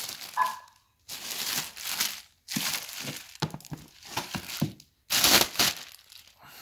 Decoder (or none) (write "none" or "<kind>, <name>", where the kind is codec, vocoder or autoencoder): none